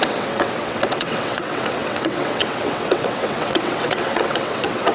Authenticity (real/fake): fake